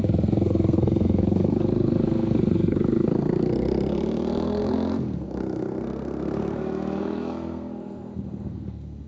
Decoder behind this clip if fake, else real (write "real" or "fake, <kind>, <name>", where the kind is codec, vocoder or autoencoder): fake, codec, SNAC